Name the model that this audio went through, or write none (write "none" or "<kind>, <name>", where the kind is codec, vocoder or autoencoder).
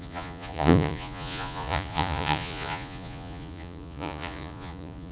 vocoder, Vocos